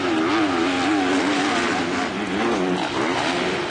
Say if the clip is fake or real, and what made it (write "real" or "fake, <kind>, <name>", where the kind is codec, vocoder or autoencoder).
real